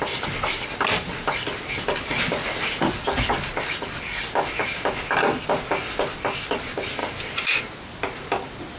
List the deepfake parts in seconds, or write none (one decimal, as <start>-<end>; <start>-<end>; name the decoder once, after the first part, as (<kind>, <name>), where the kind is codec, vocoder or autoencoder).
7.0-7.6 (vocoder, BigVGAN v2)